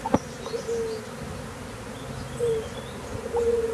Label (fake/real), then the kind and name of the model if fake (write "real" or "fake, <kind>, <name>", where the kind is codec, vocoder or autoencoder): real